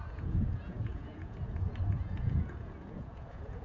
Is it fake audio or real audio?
fake